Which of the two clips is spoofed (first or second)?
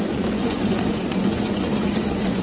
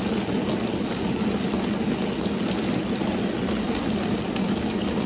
first